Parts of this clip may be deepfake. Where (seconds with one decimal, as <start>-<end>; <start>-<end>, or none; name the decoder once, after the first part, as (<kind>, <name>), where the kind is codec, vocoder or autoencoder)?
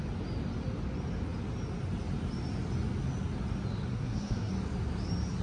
3.9-4.5 (codec, SNAC)